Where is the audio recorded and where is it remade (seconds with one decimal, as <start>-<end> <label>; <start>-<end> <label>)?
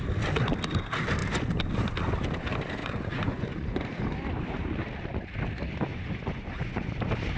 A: 0.0-2.8 recorded; 2.8-3.8 remade; 3.8-5.9 recorded; 5.9-6.9 remade; 6.9-7.4 recorded